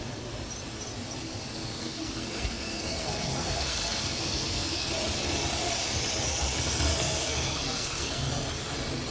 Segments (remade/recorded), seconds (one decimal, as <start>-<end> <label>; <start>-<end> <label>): 0.0-1.8 recorded; 1.8-4.9 remade; 4.9-6.9 recorded; 6.9-8.3 remade; 8.3-9.1 recorded